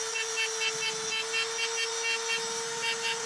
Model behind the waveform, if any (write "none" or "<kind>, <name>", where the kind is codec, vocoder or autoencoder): none